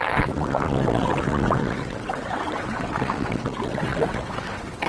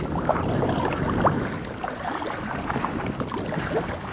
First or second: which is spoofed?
first